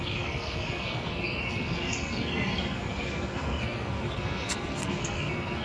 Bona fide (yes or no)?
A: no